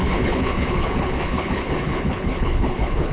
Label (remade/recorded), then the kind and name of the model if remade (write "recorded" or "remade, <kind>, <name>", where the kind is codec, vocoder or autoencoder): remade, codec, HILCodec